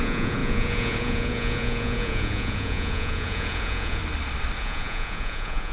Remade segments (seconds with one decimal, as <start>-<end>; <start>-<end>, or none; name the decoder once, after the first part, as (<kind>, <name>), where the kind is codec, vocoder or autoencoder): 0.0-4.0 (vocoder, Vocos); 4.6-5.7